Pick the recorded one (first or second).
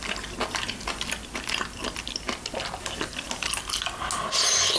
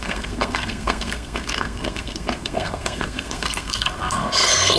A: first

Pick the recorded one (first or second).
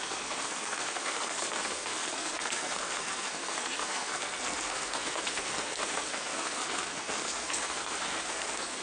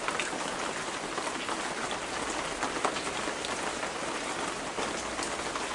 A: second